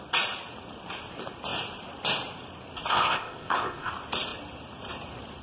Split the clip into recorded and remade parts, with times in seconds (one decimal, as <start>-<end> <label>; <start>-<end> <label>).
0.0-2.9 recorded; 2.9-3.9 remade; 3.9-5.4 recorded